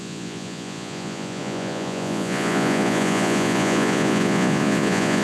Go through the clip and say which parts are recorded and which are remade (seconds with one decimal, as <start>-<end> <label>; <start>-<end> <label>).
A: 0.0-5.2 remade